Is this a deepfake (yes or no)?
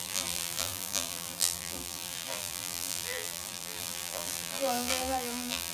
yes